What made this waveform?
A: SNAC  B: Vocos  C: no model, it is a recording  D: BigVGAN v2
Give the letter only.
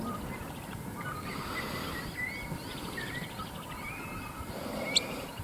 C